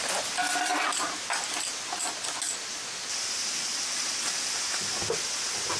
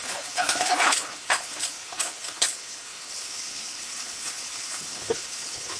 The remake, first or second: second